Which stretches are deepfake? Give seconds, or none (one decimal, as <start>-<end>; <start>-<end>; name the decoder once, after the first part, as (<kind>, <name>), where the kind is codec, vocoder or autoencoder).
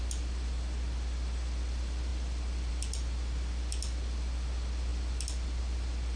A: none